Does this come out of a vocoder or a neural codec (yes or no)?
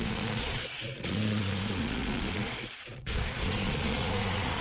yes